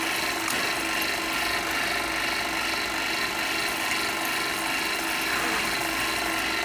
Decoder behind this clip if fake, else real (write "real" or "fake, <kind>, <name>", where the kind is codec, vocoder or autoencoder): real